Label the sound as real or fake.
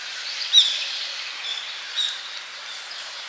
real